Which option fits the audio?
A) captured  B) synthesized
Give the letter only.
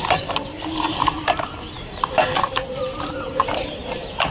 B